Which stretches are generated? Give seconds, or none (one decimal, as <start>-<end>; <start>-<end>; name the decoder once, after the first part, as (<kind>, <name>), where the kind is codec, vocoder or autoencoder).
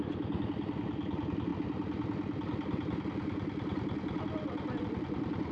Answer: none